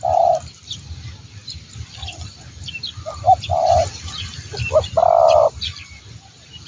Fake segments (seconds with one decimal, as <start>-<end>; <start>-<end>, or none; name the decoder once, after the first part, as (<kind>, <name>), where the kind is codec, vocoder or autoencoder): none